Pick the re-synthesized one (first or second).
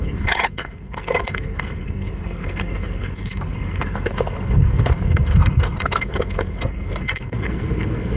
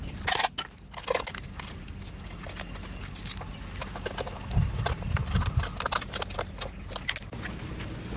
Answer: first